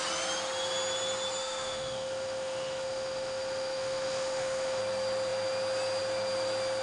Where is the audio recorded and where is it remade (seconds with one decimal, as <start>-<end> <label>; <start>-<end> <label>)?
0.0-1.4 recorded; 1.4-4.8 remade; 4.8-6.8 recorded